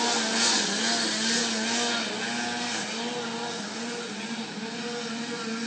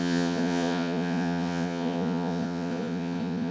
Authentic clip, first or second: first